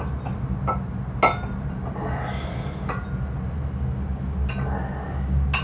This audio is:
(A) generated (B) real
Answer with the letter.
B